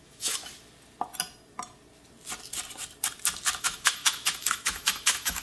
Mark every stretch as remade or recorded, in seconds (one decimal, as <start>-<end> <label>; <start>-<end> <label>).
0.0-0.4 remade; 0.4-3.6 recorded; 3.6-5.4 remade